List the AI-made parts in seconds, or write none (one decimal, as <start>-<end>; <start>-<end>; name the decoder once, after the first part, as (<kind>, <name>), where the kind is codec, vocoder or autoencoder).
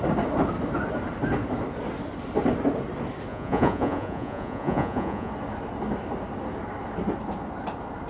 3.3-5.3 (vocoder, Vocos)